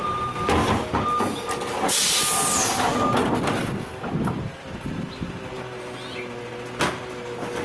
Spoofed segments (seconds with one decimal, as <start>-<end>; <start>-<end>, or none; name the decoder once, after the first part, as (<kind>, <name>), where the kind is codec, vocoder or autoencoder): none